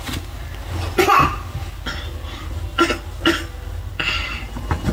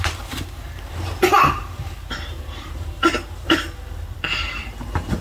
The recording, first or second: first